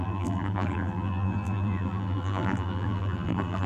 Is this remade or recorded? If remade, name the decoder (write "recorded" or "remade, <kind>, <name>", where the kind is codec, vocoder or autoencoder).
remade, vocoder, BigVGAN v2